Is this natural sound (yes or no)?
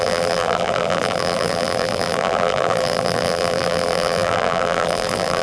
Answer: no